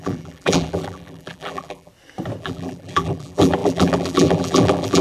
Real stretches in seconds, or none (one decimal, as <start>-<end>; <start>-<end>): 1.9-2.4